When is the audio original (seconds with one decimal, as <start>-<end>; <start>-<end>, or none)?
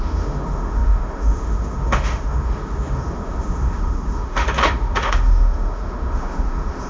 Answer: none